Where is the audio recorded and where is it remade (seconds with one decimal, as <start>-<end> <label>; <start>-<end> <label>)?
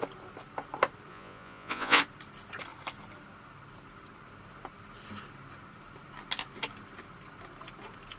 0.0-1.1 recorded; 1.1-2.0 remade; 2.0-8.2 recorded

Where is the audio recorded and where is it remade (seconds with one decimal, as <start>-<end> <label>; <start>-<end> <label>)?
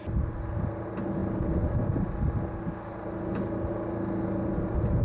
0.0-5.0 recorded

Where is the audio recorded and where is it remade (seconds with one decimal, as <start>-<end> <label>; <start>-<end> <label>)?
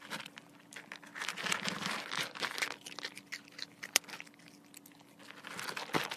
0.0-6.2 recorded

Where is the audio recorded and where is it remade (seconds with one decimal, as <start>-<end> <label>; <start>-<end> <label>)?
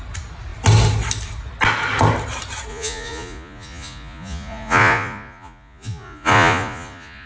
0.0-2.7 recorded; 2.7-7.3 remade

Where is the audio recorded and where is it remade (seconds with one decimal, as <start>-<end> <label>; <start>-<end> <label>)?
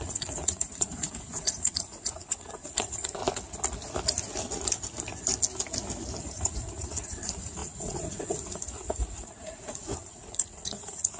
0.0-3.2 remade; 3.2-6.2 recorded; 6.2-11.2 remade